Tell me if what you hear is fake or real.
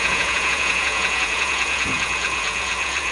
fake